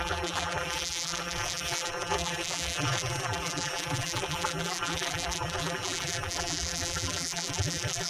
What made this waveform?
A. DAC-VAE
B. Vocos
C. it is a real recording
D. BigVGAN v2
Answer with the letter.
D